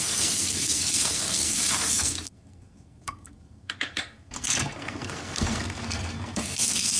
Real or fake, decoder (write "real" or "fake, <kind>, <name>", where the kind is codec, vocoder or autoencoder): fake, codec, SNAC